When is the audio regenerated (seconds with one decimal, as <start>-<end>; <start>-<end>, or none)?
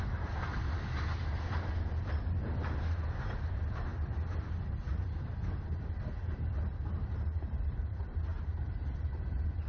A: 0.0-9.7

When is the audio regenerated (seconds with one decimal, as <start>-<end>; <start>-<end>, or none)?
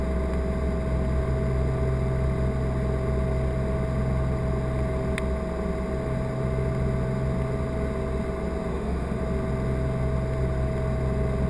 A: 8.7-9.2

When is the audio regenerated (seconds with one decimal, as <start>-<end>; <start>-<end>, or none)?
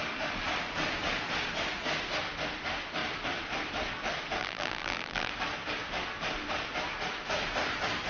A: 4.4-5.3